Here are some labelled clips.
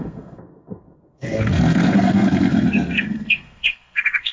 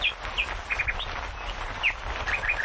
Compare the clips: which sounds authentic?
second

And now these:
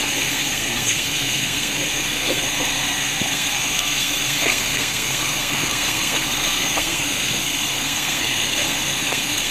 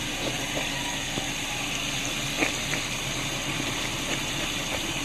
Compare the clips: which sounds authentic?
second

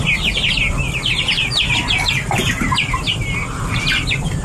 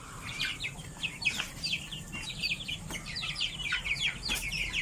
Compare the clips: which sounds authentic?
first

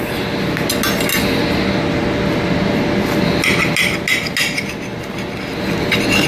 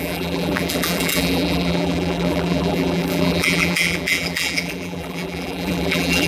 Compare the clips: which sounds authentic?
first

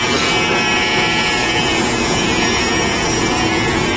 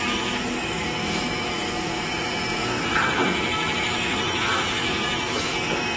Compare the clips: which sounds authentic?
first